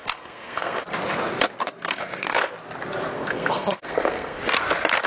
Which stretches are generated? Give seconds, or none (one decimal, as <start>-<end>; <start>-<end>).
0.0-0.8; 1.6-2.5; 3.1-4.4